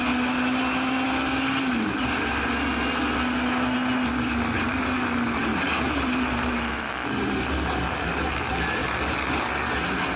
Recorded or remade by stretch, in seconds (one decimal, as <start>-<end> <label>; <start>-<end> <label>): 0.0-5.5 recorded; 5.5-6.9 remade; 6.9-10.2 recorded